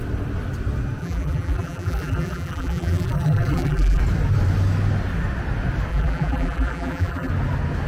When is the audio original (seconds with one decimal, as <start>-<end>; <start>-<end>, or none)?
0.0-1.0; 4.0-5.9; 7.3-7.9